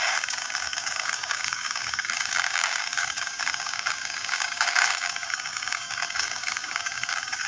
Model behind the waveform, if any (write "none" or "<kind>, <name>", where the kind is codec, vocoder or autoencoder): codec, DAC